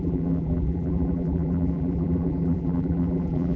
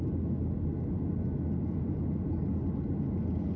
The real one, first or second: second